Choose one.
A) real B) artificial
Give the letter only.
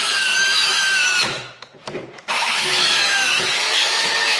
B